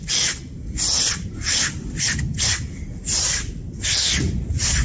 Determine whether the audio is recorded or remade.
recorded